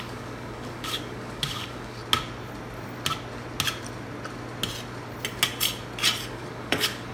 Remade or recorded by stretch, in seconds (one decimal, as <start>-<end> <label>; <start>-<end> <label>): 0.0-2.0 remade; 2.0-6.3 recorded; 6.3-7.1 remade